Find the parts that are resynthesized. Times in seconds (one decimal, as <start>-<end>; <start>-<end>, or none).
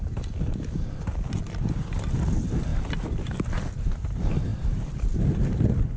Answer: 4.5-5.2